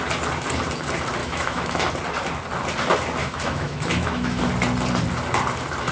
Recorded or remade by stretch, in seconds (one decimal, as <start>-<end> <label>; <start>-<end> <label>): 0.0-1.2 recorded; 1.2-1.9 remade; 1.9-3.2 recorded; 3.2-4.4 remade; 4.4-5.9 recorded